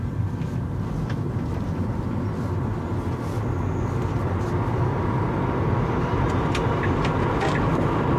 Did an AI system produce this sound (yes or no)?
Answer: no